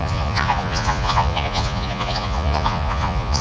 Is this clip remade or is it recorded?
remade